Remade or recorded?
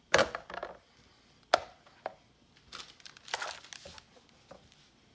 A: recorded